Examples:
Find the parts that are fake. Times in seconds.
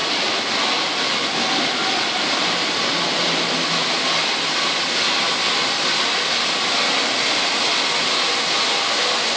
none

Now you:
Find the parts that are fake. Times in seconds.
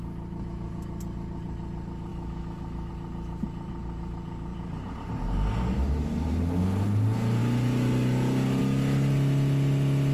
2.1-2.9 (autoencoder, DAC-VAE)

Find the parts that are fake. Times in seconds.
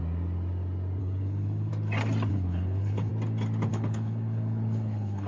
1.0-1.7 (codec, HILCodec); 2.3-3.1; 3.7-5.3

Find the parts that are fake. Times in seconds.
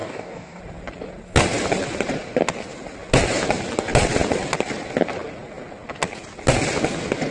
0.0-0.6 (codec, DAC)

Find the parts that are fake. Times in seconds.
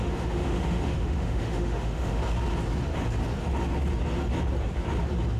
0.0-2.2 (autoencoder, DAC-VAE)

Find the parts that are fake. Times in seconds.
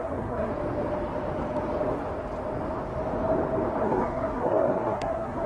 0.0-0.5 (codec, SNAC); 3.8-5.5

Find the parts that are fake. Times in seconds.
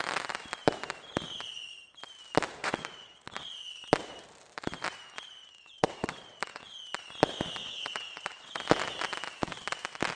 2.6-3.5 (vocoder, WaveNeXt); 5.4-6.7; 7.6-8.6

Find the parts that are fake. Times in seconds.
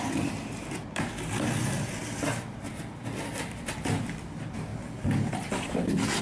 4.7-5.3 (codec, DAC)